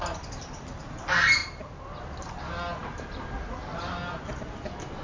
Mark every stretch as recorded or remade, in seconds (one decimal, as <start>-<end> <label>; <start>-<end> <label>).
0.0-5.0 recorded